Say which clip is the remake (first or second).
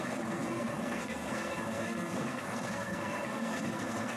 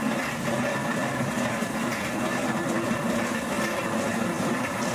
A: first